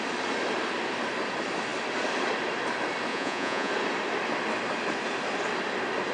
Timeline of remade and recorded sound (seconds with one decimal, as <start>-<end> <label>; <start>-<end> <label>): 0.0-3.1 recorded; 3.1-3.7 remade; 3.7-6.1 recorded